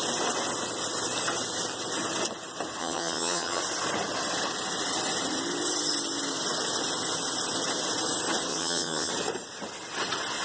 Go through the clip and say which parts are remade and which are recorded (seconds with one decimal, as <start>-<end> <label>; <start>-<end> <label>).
0.0-2.8 recorded; 2.8-3.6 remade; 3.6-8.5 recorded; 8.5-9.1 remade; 9.1-10.4 recorded